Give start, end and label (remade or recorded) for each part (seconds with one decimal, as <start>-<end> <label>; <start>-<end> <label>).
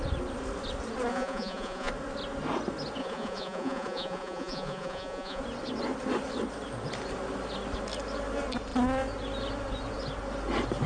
0.0-1.1 recorded; 1.1-1.9 remade; 1.9-3.0 recorded; 3.0-5.4 remade; 5.4-10.9 recorded